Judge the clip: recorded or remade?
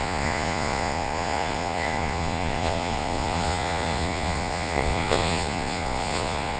remade